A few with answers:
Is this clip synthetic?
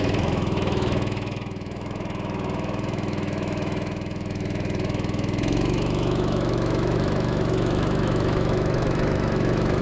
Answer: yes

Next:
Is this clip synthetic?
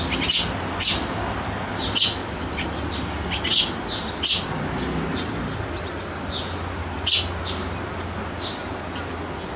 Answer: no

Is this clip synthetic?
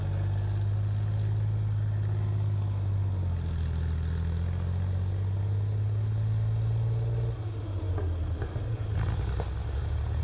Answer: no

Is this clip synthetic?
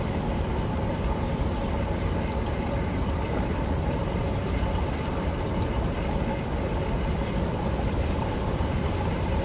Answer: no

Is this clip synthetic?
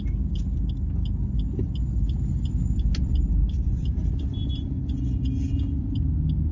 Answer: no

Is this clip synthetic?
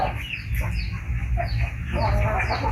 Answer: no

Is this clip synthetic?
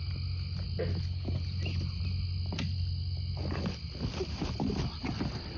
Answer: no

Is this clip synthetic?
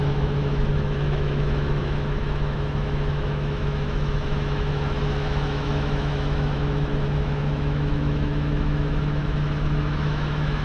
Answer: yes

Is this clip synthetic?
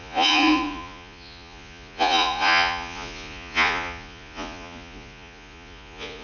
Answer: yes